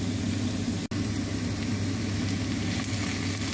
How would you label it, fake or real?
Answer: real